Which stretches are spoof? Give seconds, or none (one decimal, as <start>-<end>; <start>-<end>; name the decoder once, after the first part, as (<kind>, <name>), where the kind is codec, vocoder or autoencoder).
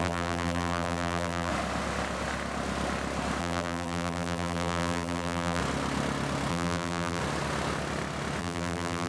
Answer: 0.0-1.5 (vocoder, BigVGAN v2); 3.4-5.6; 6.5-7.2; 8.4-9.1